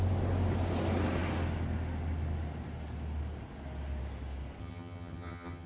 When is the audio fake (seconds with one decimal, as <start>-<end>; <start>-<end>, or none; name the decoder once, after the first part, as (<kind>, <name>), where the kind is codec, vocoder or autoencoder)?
4.6-5.7 (vocoder, HiFi-GAN)